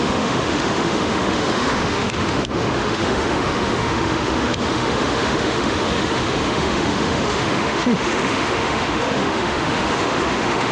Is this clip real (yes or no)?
no